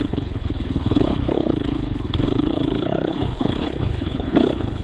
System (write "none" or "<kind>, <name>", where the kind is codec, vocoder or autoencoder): codec, HILCodec